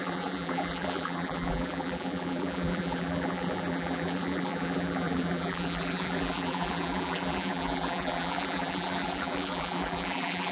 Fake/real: fake